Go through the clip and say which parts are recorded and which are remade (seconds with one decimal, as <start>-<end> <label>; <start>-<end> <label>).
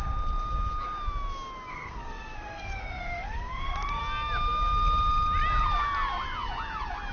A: 0.0-1.7 recorded; 1.7-4.0 remade; 4.0-7.1 recorded